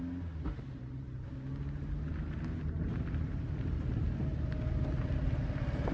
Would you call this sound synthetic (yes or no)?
no